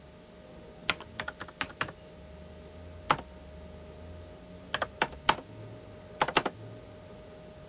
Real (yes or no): yes